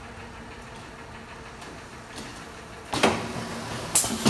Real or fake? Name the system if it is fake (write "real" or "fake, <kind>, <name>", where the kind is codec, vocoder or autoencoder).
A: real